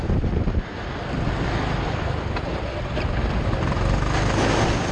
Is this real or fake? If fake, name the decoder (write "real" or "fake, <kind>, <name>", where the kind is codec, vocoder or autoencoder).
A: real